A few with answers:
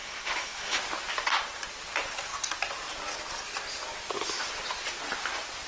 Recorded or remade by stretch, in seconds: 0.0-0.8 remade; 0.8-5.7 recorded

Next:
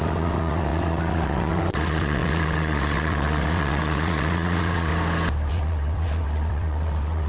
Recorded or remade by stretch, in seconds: 0.0-4.9 remade; 4.9-5.5 recorded; 5.5-7.3 remade

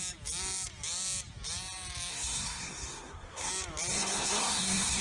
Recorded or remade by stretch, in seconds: 0.0-2.1 recorded; 2.1-3.5 remade; 3.5-3.9 recorded; 3.9-5.0 remade

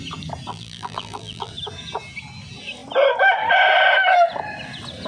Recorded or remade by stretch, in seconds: 0.0-0.5 recorded; 0.5-1.5 remade; 1.5-5.1 recorded

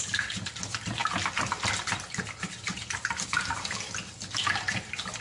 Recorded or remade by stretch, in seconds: 0.0-5.2 recorded

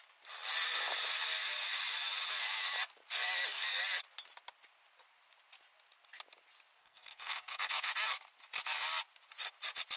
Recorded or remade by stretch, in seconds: 0.0-6.8 recorded; 6.8-7.9 remade; 7.9-10.0 recorded

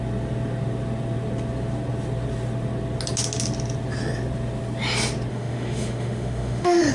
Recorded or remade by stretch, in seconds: 0.0-5.3 recorded; 5.3-6.9 remade